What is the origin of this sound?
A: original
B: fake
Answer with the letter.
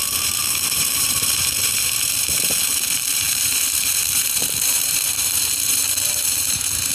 B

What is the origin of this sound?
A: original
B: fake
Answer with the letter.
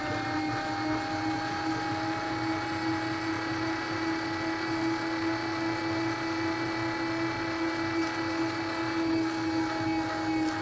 A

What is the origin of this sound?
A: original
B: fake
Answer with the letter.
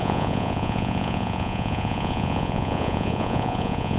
B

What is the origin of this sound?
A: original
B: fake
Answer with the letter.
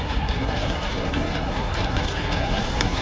B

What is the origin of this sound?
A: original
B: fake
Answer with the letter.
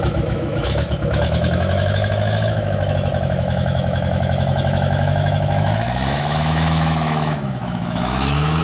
B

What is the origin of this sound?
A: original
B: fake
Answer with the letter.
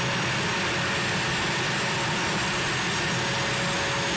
A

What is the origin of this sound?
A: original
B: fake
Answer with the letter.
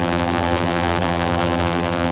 B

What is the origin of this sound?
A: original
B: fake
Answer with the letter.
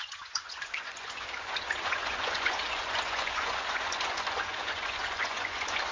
B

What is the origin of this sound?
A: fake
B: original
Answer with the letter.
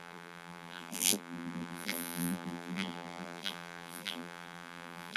A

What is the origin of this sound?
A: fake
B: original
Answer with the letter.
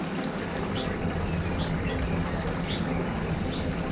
B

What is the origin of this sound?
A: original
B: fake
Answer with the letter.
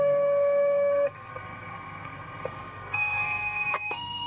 B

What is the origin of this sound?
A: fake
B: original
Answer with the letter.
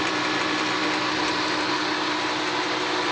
B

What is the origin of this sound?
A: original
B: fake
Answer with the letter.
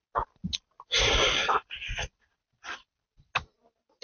A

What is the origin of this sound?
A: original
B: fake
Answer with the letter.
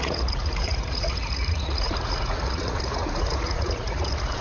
B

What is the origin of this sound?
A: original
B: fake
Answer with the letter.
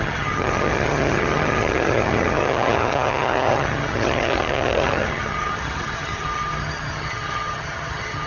B